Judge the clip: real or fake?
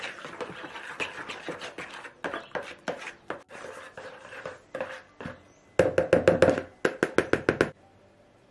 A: real